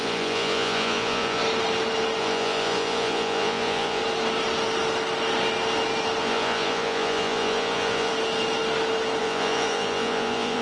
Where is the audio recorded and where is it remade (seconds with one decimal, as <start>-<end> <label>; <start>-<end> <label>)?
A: 0.0-1.4 remade; 1.4-2.2 recorded; 2.2-4.0 remade; 4.0-6.2 recorded; 6.2-8.1 remade; 8.1-9.2 recorded; 9.2-10.6 remade